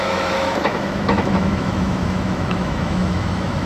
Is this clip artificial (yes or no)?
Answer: yes